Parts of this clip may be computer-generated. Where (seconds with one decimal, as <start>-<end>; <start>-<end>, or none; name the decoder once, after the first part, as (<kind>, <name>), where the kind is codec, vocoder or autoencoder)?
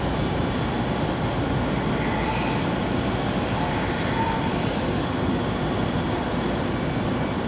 4.5-5.4 (codec, DAC)